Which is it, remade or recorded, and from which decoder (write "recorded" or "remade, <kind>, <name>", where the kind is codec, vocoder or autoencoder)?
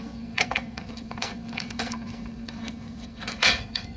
remade, codec, SNAC